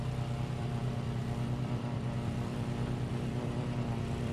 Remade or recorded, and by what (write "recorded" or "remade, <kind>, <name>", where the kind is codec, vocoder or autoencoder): remade, vocoder, BigVGAN v2